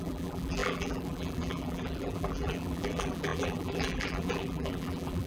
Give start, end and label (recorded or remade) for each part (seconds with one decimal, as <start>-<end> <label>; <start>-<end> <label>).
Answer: 0.0-5.3 remade